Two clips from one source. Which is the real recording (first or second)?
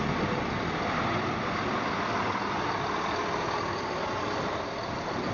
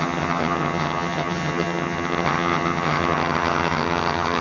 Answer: first